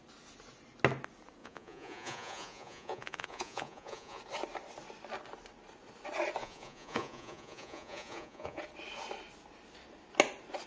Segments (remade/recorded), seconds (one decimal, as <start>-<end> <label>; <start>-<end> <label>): 0.0-1.4 recorded; 1.4-4.2 remade; 4.2-6.4 recorded; 6.4-8.6 remade; 8.6-10.7 recorded